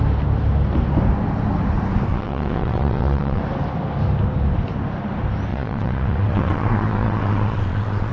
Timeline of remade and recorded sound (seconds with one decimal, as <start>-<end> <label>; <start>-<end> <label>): 0.0-2.1 recorded; 2.1-3.4 remade; 3.4-5.5 recorded; 5.5-8.1 remade